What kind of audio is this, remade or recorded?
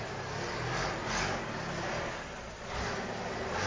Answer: recorded